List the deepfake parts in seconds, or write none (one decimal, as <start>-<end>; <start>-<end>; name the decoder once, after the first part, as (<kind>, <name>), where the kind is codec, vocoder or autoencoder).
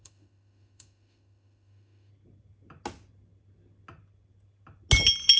0.0-2.1 (autoencoder, DAC-VAE)